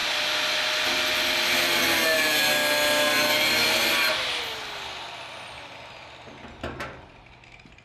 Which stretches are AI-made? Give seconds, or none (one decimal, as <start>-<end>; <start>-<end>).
none